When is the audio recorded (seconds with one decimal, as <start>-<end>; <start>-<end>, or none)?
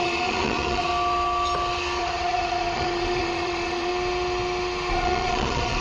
0.9-2.0; 3.9-4.9